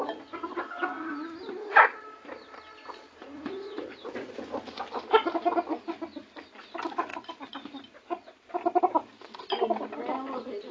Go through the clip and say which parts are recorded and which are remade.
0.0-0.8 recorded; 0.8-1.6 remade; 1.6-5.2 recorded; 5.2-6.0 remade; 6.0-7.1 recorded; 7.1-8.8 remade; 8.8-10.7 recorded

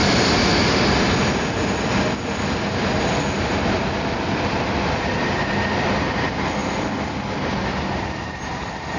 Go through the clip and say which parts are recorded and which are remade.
0.0-9.0 recorded